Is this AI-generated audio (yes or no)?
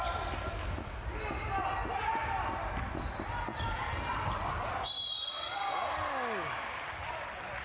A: no